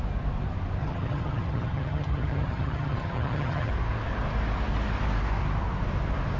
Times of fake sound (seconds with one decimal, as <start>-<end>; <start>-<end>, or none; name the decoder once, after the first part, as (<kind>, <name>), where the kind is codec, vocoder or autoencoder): 0.8-3.7 (vocoder, HiFi-GAN)